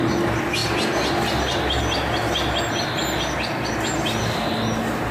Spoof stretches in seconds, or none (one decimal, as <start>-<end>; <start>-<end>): none